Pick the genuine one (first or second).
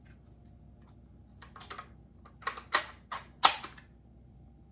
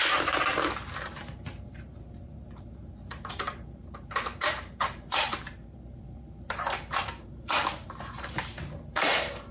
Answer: first